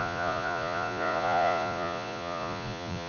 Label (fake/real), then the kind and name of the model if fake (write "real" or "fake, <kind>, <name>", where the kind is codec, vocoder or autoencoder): fake, vocoder, Vocos